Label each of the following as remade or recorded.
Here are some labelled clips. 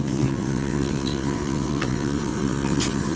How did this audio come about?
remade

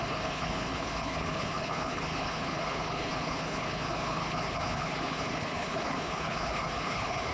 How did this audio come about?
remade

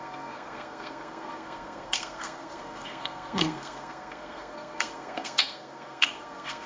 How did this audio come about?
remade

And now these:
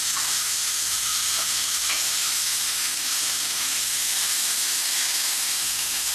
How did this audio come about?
remade